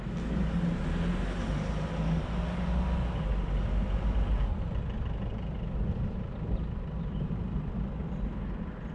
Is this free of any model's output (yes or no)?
yes